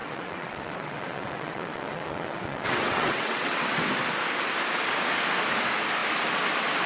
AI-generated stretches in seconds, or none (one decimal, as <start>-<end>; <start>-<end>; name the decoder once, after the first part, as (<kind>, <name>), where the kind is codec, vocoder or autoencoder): 0.0-3.8 (vocoder, WaveNeXt)